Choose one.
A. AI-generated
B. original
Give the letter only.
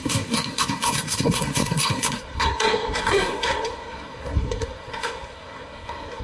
A